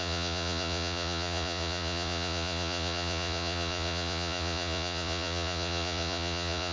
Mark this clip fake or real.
fake